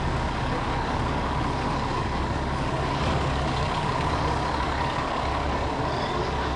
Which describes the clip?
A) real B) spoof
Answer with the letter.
B